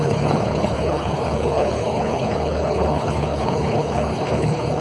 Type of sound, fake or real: fake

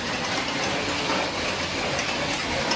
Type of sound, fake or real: real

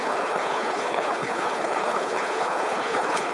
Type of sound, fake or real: fake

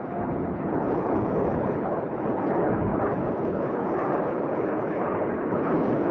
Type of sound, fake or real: fake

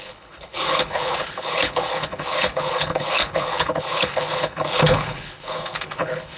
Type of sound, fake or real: fake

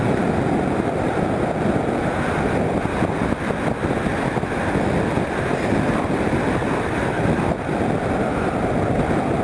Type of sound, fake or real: real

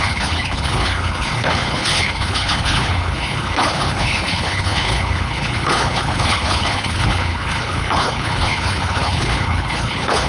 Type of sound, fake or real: fake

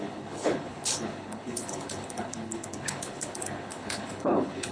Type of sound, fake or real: fake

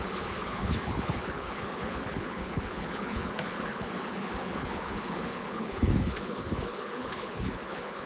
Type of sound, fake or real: fake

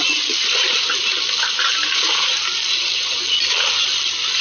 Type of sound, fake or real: real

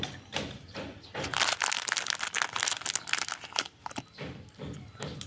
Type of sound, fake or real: real